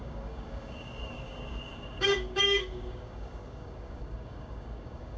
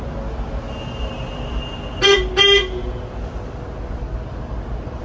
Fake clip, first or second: first